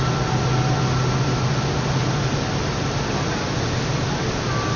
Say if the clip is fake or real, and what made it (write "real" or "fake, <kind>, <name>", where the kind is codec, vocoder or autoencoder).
real